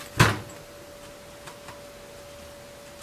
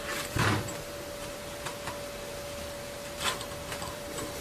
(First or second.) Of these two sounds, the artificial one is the second